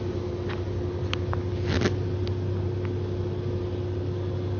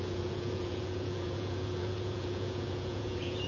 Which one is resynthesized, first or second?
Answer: second